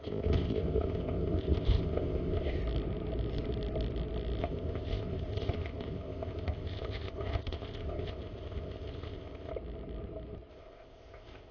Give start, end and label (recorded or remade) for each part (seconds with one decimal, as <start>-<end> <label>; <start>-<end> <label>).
0.0-2.6 remade; 2.6-4.4 recorded; 4.4-9.5 remade; 9.5-10.5 recorded; 10.5-11.5 remade